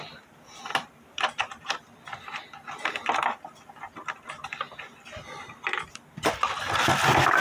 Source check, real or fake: real